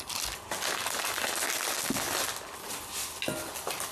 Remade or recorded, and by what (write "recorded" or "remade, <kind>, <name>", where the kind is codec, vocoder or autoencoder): recorded